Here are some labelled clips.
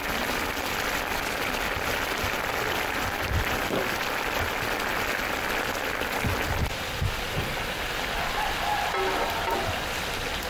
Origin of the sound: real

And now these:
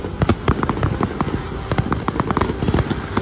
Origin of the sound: real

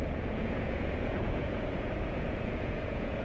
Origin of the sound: fake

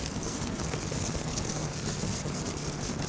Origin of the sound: fake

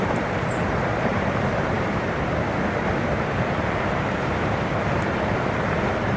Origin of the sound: fake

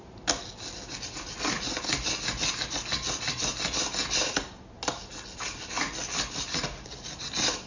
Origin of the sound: real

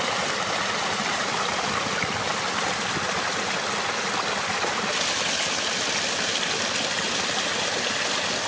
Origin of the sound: real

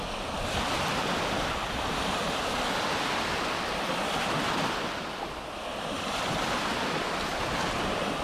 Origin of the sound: real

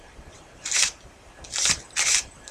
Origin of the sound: real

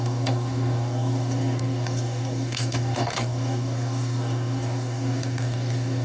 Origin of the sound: fake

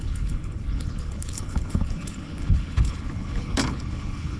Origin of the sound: fake